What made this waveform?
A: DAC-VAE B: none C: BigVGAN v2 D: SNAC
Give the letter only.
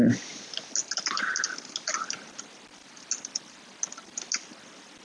B